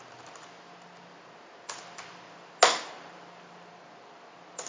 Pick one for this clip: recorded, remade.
recorded